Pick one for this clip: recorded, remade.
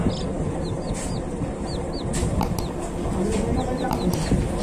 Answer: recorded